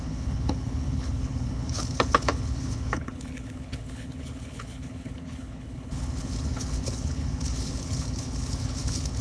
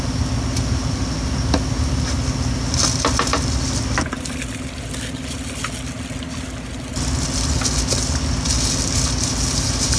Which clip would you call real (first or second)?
second